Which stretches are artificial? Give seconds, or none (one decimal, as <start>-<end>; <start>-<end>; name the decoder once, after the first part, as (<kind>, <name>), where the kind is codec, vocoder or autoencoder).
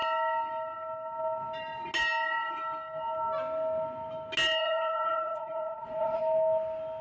4.6-6.2 (vocoder, Vocos)